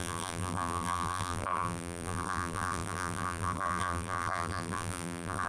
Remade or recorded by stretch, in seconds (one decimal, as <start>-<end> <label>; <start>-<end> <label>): 0.0-5.5 remade